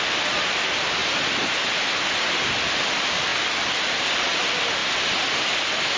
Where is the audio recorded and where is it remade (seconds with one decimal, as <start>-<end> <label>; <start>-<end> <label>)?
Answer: 0.0-6.0 recorded